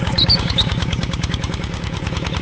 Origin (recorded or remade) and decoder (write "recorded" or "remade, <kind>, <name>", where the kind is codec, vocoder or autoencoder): remade, codec, DAC